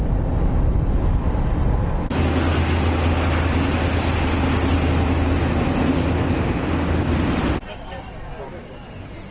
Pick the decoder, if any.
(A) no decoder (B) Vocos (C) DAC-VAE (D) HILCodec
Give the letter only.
A